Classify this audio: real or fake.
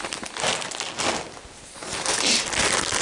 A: real